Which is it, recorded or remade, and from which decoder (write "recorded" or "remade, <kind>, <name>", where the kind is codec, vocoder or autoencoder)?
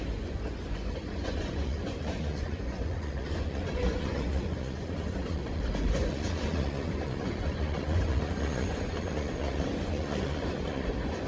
remade, vocoder, Vocos